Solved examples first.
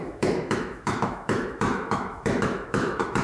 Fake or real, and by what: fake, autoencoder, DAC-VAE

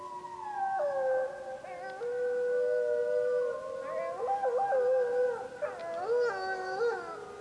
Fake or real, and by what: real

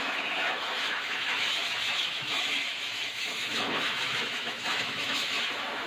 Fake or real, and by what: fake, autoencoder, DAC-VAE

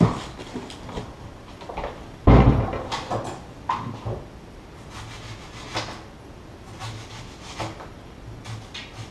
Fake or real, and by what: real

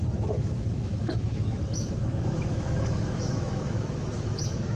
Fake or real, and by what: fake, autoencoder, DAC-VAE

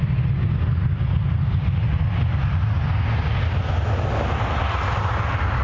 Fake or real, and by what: real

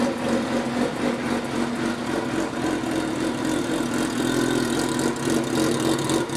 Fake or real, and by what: real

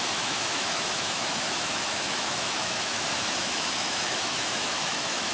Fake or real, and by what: fake, autoencoder, DAC-VAE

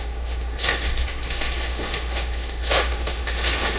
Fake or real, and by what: fake, autoencoder, DAC-VAE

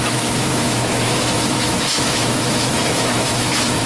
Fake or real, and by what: fake, autoencoder, DAC-VAE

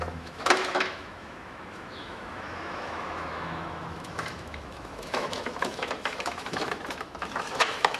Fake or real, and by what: fake, autoencoder, DAC-VAE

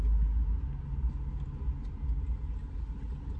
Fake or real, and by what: real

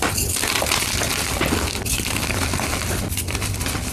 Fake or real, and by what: real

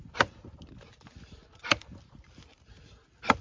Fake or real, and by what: real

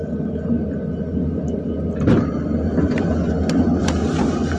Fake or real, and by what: real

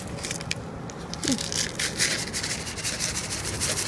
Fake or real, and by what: real